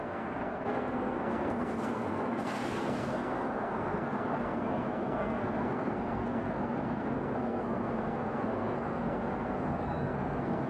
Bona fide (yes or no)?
no